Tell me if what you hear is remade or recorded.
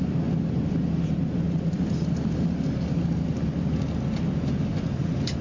recorded